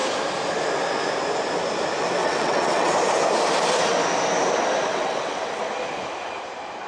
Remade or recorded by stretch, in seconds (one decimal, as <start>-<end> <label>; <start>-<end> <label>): 0.0-2.2 recorded; 2.2-2.9 remade; 2.9-4.9 recorded; 4.9-5.6 remade; 5.6-6.9 recorded